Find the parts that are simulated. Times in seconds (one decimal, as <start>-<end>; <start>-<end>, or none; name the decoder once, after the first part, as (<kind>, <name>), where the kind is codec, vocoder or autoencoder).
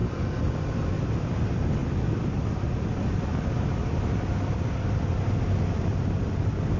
none